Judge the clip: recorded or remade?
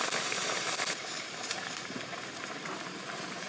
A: remade